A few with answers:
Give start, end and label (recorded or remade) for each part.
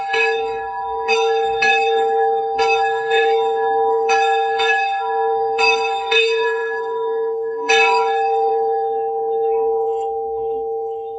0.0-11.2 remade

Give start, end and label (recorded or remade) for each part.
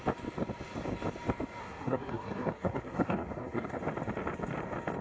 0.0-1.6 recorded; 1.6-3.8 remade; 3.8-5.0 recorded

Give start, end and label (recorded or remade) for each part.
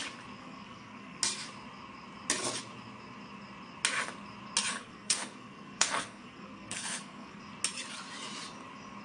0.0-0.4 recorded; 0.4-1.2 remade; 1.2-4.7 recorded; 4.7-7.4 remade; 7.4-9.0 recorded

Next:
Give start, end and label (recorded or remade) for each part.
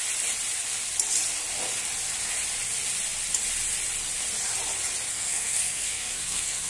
0.0-5.1 recorded; 5.1-6.7 remade